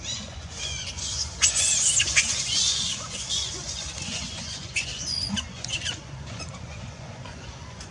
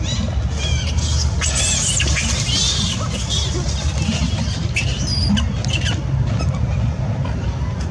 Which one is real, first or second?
second